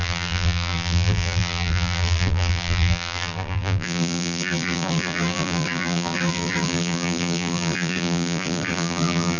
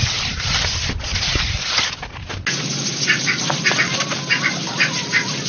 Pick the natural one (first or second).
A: second